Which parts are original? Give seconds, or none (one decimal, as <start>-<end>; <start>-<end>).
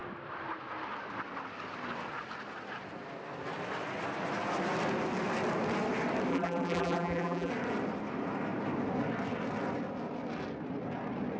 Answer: 0.0-6.3; 7.5-11.4